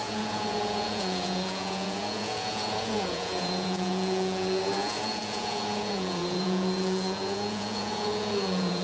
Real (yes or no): no